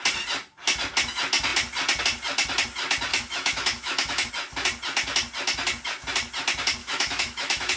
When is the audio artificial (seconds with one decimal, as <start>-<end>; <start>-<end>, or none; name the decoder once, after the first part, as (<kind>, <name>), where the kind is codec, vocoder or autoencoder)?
3.1-4.3 (autoencoder, DAC-VAE); 6.8-7.8